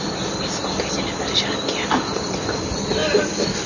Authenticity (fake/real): real